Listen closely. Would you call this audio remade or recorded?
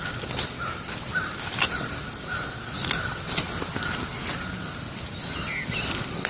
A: recorded